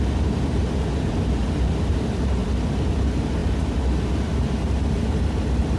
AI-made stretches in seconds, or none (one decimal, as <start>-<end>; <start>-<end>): 0.0-0.6; 1.9-2.4; 2.9-3.4; 4.0-5.8